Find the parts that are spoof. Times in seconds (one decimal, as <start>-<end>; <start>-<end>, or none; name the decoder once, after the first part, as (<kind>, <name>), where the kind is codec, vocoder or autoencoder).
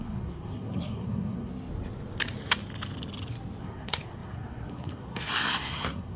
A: 0.0-1.5 (codec, SNAC); 3.6-6.2